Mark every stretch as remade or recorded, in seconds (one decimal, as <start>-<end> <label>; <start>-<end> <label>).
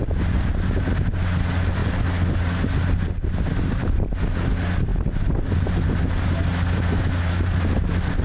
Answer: 0.0-8.2 recorded